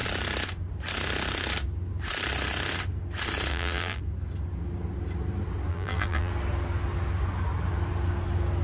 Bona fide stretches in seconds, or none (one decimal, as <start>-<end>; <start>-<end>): 0.0-3.5; 4.0-5.7; 6.3-8.6